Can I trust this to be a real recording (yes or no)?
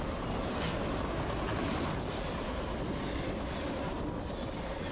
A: yes